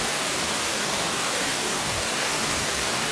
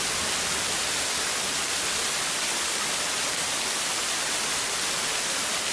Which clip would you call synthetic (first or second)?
first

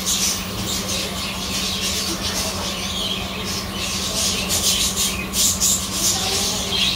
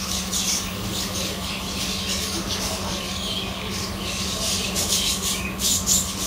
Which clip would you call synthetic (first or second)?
second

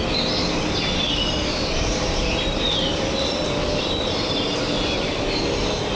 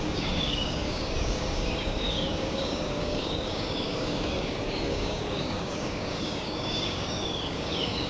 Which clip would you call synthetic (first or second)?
second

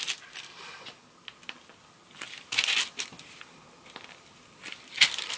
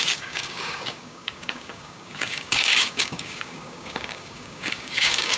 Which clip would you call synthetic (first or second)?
second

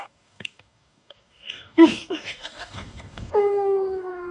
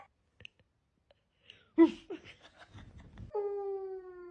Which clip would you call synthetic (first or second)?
first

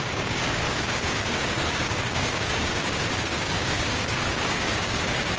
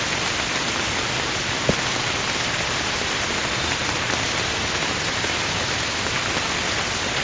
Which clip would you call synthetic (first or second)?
first